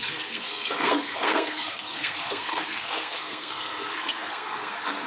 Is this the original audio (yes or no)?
no